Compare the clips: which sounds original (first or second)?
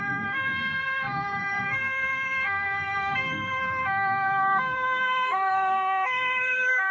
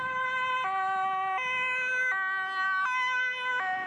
second